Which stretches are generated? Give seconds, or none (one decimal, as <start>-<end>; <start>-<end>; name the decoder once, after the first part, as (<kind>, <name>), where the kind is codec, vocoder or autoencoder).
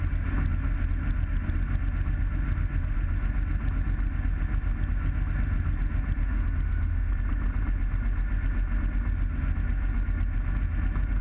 6.2-7.1 (autoencoder, DAC-VAE)